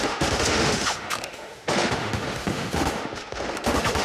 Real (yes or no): no